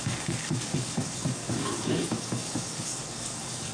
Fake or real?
fake